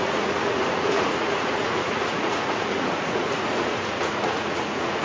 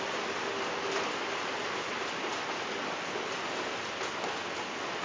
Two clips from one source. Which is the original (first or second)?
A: second